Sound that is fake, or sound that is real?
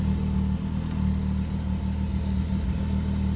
real